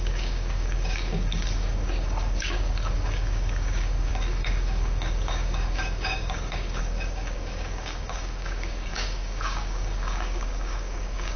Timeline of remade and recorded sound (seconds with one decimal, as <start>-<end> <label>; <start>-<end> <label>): 0.0-11.4 remade